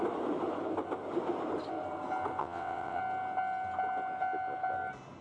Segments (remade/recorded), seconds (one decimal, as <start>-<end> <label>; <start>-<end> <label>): 0.0-2.4 recorded; 2.4-3.0 remade; 3.0-5.2 recorded